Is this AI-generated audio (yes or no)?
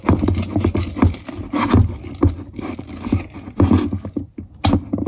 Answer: no